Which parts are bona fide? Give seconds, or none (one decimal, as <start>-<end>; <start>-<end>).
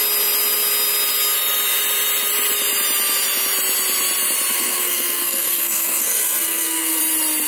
0.0-4.5; 7.0-7.5